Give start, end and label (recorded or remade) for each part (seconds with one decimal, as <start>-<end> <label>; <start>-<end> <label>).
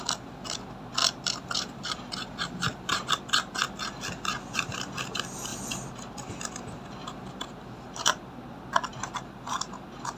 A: 0.0-1.0 recorded; 1.0-3.1 remade; 3.1-5.5 recorded; 5.5-6.5 remade; 6.5-7.0 recorded; 7.0-8.2 remade; 8.2-10.2 recorded